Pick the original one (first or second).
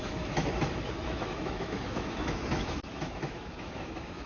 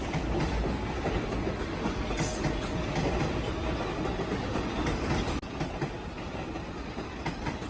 second